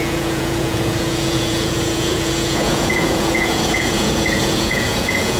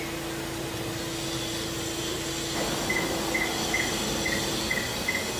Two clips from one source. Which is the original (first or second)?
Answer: second